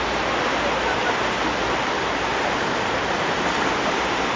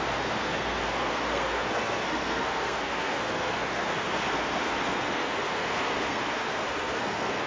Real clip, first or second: first